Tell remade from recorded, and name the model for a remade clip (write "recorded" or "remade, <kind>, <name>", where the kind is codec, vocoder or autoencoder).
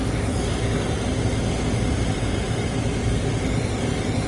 recorded